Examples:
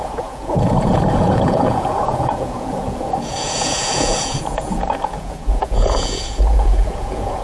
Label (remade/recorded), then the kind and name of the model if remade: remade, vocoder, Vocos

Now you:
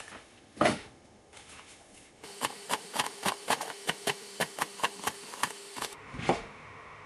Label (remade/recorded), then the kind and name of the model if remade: remade, autoencoder, DAC-VAE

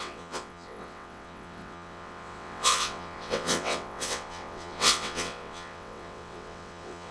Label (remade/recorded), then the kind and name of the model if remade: remade, vocoder, WaveNeXt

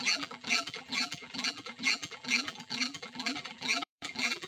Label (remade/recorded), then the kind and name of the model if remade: remade, vocoder, BigVGAN v2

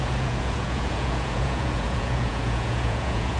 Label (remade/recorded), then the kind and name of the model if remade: remade, vocoder, Vocos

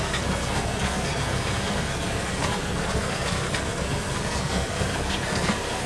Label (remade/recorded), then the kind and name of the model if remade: remade, codec, SNAC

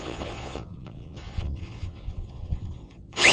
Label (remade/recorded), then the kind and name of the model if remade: remade, vocoder, Vocos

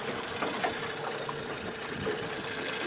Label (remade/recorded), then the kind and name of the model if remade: recorded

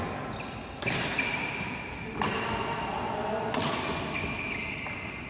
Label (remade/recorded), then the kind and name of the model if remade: recorded